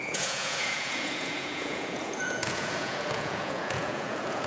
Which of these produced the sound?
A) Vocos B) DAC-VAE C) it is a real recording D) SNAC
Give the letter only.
A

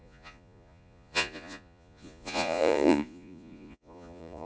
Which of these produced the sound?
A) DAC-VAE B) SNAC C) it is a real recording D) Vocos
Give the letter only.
D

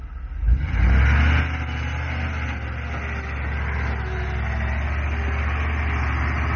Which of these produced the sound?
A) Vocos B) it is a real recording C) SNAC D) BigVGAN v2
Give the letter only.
B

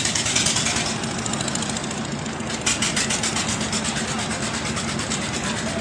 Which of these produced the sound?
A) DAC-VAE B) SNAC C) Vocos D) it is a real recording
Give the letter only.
D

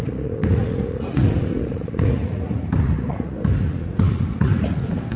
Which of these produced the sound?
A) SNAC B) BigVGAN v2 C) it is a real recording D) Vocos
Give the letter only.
D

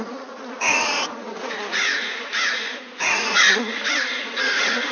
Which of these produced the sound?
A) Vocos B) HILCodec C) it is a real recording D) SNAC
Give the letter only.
A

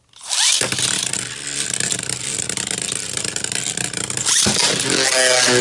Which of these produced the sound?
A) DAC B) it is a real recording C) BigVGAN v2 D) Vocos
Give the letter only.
B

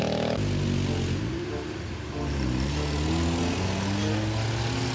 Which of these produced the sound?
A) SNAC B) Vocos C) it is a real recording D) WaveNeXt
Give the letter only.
C